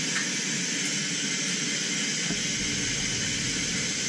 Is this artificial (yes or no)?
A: no